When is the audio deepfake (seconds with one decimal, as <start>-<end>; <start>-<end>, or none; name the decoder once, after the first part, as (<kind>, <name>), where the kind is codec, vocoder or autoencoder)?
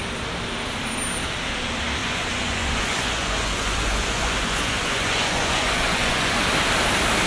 2.0-6.4 (vocoder, Vocos)